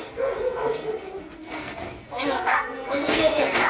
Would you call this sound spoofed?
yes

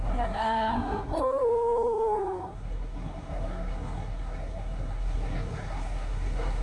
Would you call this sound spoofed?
yes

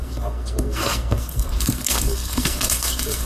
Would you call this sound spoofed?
yes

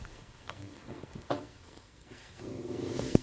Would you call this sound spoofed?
yes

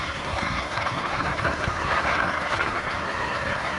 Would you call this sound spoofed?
yes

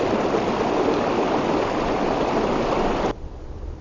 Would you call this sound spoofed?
no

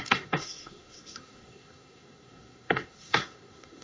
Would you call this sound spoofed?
yes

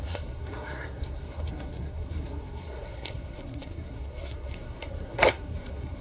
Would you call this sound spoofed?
yes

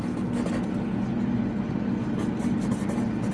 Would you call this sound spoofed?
no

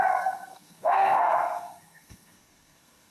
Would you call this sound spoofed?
yes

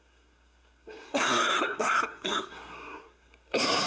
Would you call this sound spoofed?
yes